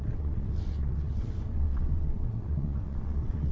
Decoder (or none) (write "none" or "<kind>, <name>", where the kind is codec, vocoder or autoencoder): vocoder, WaveNeXt